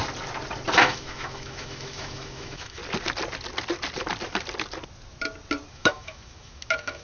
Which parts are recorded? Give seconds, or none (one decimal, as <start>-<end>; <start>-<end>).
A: 0.0-0.8; 2.8-5.7